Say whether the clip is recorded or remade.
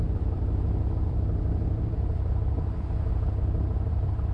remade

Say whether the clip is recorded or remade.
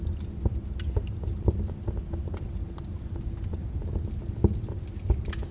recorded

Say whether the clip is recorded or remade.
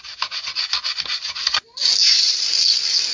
recorded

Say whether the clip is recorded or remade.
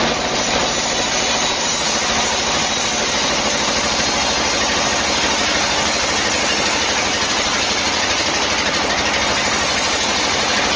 recorded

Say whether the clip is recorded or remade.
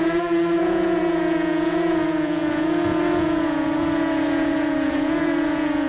remade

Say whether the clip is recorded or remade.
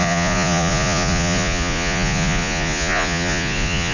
remade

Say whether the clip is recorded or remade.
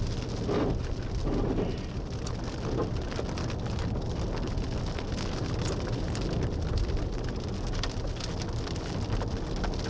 recorded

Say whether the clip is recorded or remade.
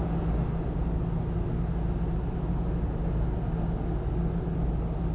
recorded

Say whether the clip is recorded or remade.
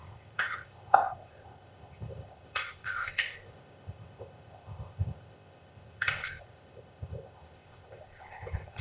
remade